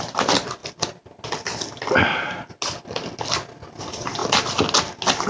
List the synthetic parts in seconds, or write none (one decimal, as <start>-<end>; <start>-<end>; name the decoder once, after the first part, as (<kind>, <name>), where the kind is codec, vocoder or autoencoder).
none

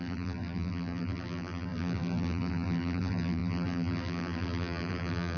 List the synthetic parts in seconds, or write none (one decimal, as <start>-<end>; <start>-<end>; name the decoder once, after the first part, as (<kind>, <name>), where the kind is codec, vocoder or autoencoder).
0.0-5.4 (vocoder, BigVGAN v2)